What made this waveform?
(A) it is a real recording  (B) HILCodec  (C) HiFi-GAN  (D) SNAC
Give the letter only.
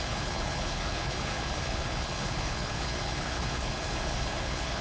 B